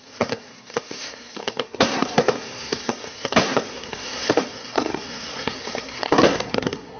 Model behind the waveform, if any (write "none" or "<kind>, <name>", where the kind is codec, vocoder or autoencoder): codec, SNAC